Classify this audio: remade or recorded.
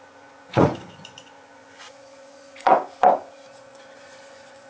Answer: remade